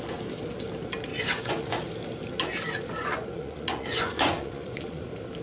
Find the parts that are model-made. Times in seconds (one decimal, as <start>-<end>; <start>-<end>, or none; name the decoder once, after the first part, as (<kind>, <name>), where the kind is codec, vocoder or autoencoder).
1.1-1.8 (vocoder, Vocos); 3.0-5.0